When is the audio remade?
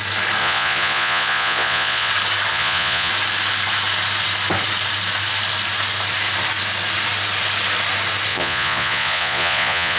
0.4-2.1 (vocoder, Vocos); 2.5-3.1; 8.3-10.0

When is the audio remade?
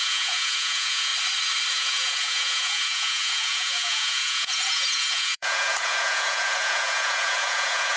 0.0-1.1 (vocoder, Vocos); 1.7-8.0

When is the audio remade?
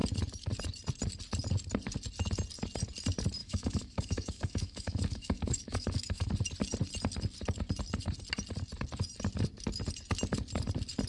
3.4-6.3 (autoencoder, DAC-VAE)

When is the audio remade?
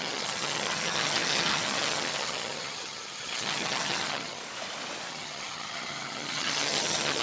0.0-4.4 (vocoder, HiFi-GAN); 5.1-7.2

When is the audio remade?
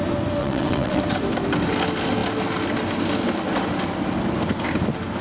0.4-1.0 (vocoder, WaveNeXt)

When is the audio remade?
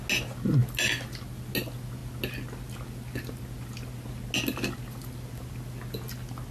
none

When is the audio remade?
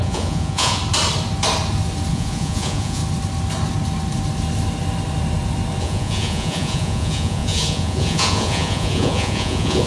0.0-0.8 (vocoder, Vocos); 2.1-3.0; 5.8-9.9